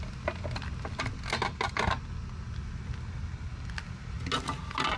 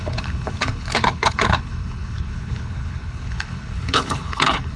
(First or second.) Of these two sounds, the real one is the first